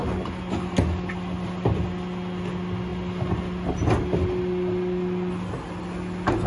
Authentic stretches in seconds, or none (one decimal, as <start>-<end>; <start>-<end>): 0.0-6.5